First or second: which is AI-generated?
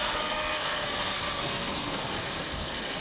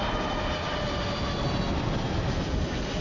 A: first